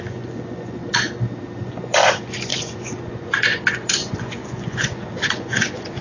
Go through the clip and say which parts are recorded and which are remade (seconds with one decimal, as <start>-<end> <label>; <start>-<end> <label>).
0.0-0.8 remade; 0.8-1.6 recorded; 1.6-6.0 remade